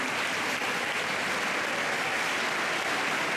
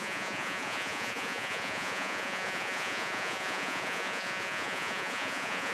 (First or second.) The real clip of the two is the first